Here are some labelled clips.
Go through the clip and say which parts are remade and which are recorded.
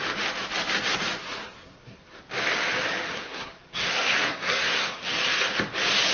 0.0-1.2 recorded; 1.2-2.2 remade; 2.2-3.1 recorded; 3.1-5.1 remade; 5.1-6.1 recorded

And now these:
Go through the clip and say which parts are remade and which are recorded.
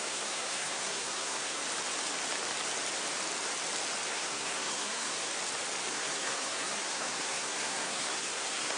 0.0-1.6 remade; 1.6-4.1 recorded; 4.1-5.3 remade; 5.3-5.9 recorded; 5.9-8.8 remade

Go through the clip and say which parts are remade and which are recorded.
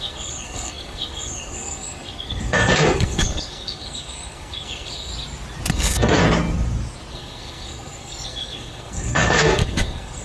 0.0-5.1 remade; 5.1-5.7 recorded; 5.7-6.2 remade; 6.2-7.1 recorded; 7.1-10.2 remade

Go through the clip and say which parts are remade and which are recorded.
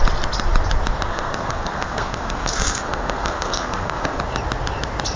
0.0-1.1 recorded; 1.1-4.2 remade; 4.2-5.2 recorded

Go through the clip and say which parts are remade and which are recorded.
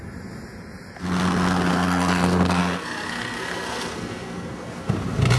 0.0-1.7 recorded; 1.7-4.9 remade; 4.9-5.4 recorded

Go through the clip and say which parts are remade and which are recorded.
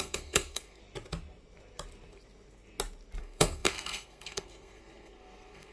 0.0-0.8 remade; 0.8-3.2 recorded; 3.2-5.7 remade